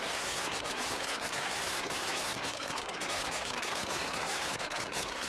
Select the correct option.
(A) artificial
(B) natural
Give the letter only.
A